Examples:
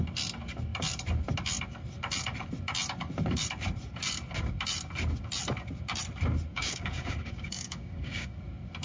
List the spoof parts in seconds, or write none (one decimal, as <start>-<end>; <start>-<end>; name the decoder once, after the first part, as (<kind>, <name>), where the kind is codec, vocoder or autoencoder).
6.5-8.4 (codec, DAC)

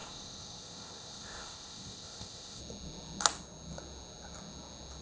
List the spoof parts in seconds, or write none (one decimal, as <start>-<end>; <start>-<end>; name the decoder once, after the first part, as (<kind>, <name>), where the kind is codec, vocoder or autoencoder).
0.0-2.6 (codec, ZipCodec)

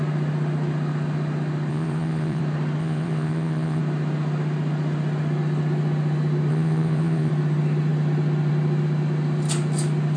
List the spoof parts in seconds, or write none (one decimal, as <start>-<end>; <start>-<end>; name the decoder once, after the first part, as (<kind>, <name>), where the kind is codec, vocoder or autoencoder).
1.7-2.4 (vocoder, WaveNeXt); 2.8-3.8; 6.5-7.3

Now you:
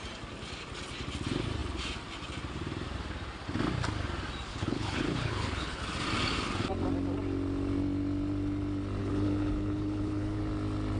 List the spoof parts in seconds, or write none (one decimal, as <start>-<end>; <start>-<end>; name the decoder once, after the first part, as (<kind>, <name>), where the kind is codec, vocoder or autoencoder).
4.5-5.8 (codec, HILCodec); 9.0-10.4